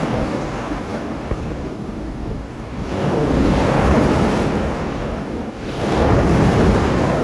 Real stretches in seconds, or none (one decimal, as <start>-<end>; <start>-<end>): 3.9-4.6; 6.1-6.8